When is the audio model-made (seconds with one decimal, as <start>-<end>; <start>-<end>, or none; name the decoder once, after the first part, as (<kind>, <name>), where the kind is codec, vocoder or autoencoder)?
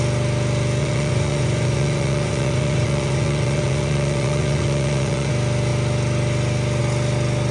0.8-5.3 (vocoder, Vocos)